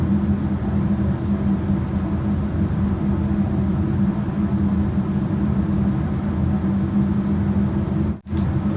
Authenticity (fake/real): real